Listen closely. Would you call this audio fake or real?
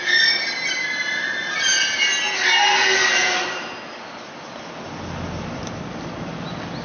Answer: real